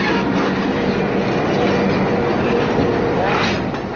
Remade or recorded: recorded